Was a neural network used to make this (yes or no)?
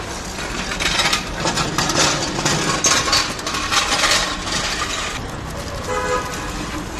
no